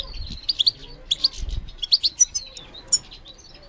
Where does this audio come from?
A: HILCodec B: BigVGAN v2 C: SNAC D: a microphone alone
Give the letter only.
D